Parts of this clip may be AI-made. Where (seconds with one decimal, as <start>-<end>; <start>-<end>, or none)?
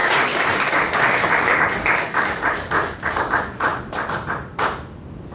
0.0-3.7